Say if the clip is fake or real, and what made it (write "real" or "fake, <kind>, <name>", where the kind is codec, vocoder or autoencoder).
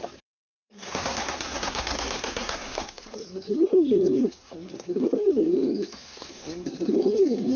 fake, codec, SNAC